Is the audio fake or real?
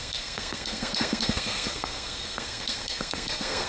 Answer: fake